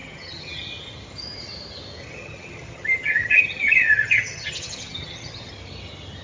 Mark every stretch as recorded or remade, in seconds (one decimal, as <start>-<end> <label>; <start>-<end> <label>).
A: 0.0-0.6 remade; 0.6-2.0 recorded; 2.0-5.5 remade; 5.5-6.2 recorded